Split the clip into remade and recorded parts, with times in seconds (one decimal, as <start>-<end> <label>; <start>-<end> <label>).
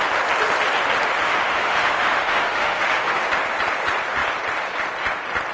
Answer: 0.0-1.2 recorded; 1.2-3.2 remade; 3.2-5.5 recorded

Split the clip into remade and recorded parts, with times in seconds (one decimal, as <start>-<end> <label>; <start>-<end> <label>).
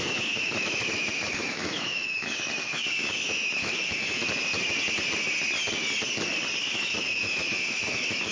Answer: 0.0-4.2 remade; 4.2-6.6 recorded; 6.6-8.3 remade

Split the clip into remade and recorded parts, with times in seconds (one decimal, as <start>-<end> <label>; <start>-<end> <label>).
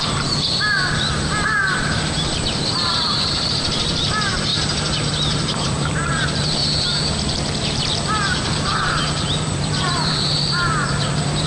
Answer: 0.0-4.5 remade; 4.5-5.1 recorded; 5.1-6.6 remade; 6.6-7.3 recorded; 7.3-11.5 remade